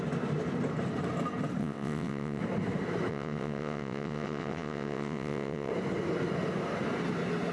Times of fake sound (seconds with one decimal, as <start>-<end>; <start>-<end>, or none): 1.6-2.4; 3.1-5.7